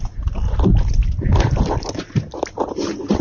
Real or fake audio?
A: real